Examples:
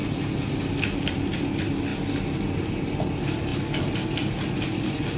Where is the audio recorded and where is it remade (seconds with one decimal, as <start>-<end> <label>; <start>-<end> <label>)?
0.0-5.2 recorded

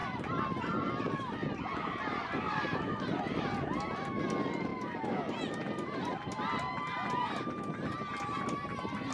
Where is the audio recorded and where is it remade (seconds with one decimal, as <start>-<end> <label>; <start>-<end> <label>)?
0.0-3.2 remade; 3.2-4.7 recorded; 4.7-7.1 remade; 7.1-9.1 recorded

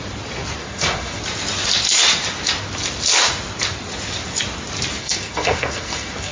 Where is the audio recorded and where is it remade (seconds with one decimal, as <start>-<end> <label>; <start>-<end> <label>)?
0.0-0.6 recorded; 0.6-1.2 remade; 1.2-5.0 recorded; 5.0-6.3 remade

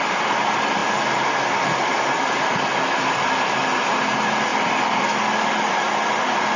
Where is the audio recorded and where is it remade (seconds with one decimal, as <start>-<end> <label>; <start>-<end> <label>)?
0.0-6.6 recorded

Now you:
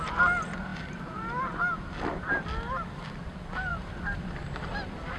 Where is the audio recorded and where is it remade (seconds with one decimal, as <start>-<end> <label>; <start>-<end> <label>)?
0.0-3.7 recorded; 3.7-5.2 remade